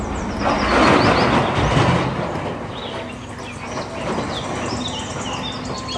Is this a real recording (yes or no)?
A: yes